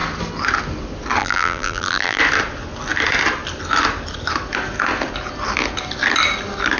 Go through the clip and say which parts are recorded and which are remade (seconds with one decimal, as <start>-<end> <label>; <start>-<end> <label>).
0.0-1.2 recorded; 1.2-2.2 remade; 2.2-6.8 recorded